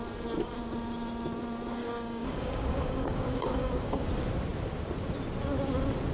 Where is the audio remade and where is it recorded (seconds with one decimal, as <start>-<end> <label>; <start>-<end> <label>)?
0.0-1.8 recorded; 1.8-4.1 remade; 4.1-6.1 recorded